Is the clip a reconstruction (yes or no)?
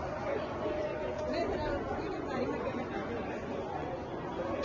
yes